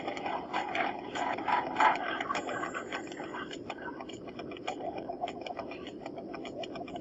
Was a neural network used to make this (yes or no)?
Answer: no